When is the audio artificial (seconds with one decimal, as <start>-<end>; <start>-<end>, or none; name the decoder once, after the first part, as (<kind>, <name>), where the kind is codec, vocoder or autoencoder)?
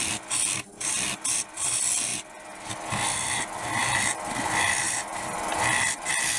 none